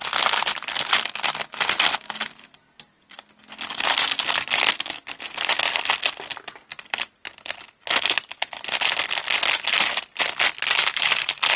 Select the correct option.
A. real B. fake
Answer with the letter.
A